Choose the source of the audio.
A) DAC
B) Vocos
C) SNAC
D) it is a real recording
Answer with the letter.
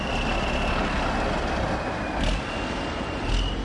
D